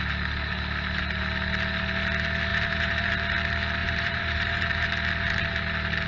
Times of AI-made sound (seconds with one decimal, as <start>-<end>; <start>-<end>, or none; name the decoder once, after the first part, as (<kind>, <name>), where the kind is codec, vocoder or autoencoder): 2.5-3.1 (vocoder, BigVGAN v2); 3.8-4.9